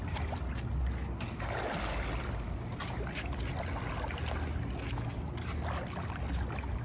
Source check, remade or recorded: recorded